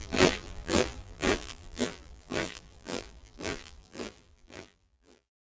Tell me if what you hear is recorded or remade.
remade